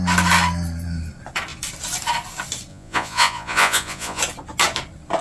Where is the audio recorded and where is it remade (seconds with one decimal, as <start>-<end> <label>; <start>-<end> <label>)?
0.0-2.7 recorded; 2.7-4.2 remade; 4.2-5.2 recorded